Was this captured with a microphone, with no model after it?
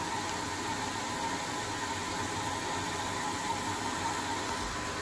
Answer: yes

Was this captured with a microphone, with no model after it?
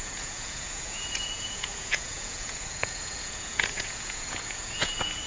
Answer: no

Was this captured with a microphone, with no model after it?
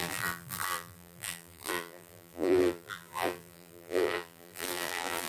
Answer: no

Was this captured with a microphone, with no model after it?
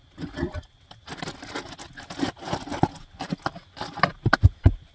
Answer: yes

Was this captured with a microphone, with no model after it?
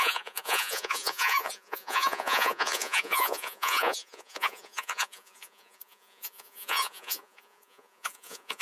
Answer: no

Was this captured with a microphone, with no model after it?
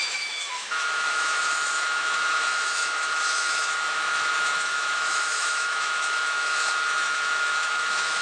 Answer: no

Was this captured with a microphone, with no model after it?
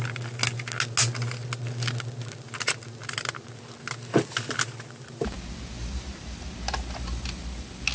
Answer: yes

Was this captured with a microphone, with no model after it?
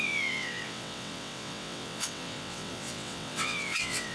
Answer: no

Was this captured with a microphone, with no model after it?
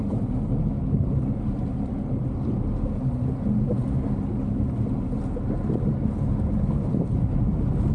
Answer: yes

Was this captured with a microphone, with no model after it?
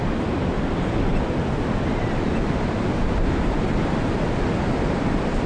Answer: yes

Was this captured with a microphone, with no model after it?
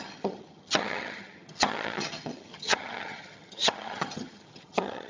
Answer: no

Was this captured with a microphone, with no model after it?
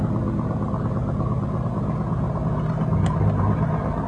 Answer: yes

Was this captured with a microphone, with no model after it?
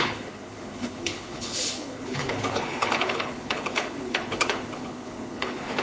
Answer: no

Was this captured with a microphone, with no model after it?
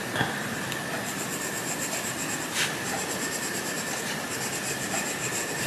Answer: yes